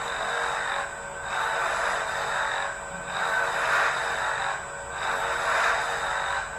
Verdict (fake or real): real